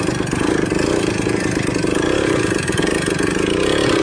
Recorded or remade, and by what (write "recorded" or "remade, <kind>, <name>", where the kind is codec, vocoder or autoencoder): recorded